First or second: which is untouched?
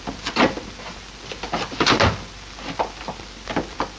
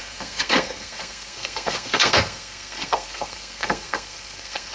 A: first